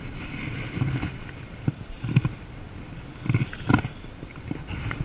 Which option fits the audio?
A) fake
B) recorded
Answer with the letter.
A